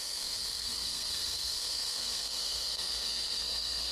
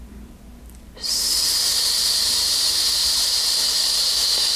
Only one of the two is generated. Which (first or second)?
first